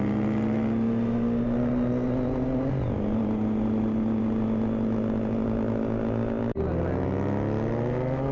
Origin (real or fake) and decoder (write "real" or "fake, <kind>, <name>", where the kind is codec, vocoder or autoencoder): real